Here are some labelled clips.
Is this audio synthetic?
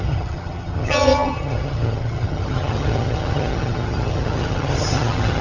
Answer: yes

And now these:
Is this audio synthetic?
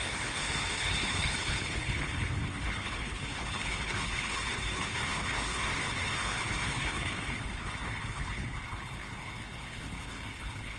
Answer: yes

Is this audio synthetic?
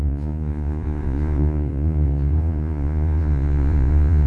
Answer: yes